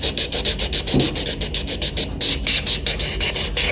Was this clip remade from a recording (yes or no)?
no